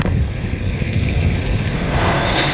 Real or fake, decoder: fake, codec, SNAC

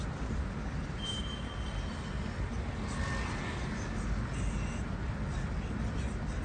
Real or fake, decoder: real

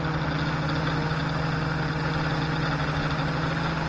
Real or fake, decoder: real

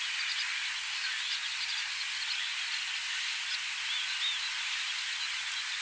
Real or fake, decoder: real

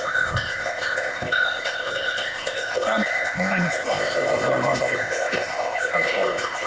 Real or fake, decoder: fake, codec, ZipCodec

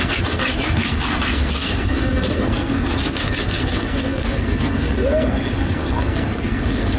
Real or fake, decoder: fake, codec, SNAC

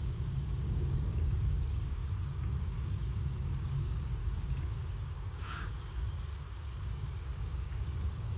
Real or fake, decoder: fake, codec, DAC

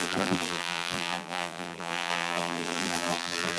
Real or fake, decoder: fake, vocoder, BigVGAN v2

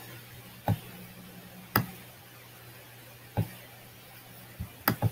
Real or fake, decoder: real